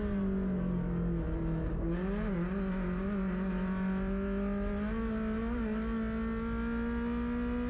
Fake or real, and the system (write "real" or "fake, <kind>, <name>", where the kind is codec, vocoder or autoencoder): real